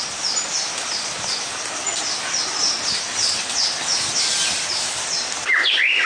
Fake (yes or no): no